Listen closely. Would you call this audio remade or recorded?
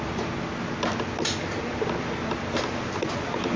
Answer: recorded